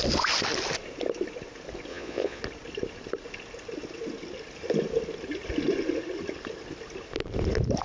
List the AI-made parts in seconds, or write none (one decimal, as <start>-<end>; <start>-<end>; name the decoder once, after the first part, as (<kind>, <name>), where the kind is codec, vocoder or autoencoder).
1.9-2.4 (vocoder, Vocos)